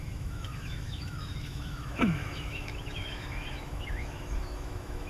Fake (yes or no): yes